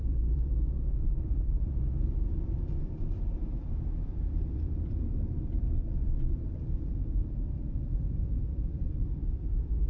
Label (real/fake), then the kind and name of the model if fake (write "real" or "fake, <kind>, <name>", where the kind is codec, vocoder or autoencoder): fake, vocoder, BigVGAN v2